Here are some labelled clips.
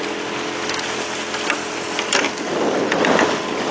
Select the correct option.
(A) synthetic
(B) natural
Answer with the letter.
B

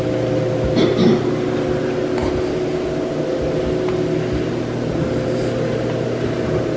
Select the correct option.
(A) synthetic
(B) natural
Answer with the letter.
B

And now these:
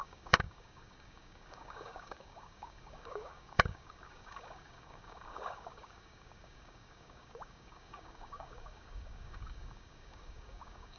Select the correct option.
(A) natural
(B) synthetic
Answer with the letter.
B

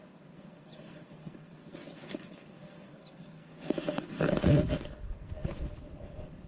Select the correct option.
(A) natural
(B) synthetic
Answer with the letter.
B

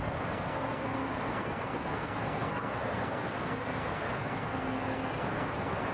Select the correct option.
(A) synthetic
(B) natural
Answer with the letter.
A